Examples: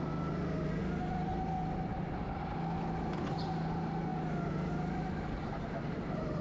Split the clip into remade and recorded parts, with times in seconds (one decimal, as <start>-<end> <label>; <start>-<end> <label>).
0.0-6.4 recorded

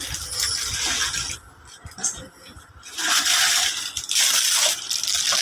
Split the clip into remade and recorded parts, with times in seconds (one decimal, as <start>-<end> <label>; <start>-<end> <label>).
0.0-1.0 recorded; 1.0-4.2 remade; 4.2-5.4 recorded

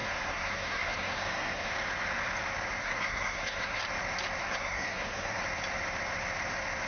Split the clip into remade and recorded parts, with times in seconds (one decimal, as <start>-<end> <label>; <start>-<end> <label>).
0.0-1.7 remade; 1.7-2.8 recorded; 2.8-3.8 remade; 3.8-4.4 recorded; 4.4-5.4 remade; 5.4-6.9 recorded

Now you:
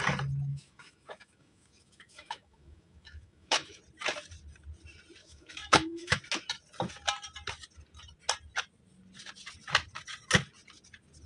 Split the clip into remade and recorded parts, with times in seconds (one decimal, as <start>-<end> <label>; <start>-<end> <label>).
0.0-0.5 recorded; 0.5-3.8 remade; 3.8-5.2 recorded; 5.2-6.2 remade; 6.2-11.3 recorded

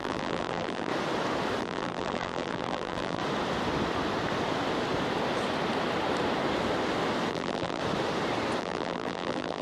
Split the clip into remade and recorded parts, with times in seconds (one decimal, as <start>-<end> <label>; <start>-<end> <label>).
0.0-0.9 remade; 0.9-1.6 recorded; 1.6-3.2 remade; 3.2-7.3 recorded; 7.3-7.8 remade; 7.8-8.6 recorded; 8.6-9.6 remade